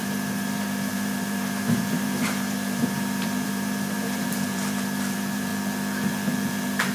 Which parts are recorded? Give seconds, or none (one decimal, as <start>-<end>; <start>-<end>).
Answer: 5.5-6.5